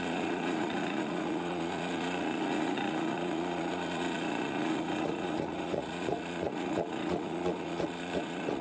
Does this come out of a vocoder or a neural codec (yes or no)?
yes